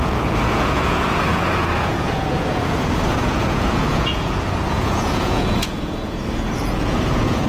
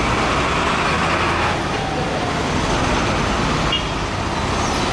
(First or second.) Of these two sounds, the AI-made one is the first